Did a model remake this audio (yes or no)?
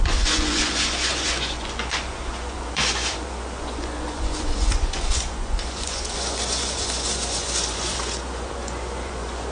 yes